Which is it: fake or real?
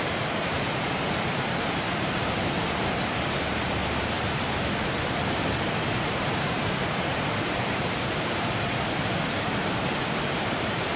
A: fake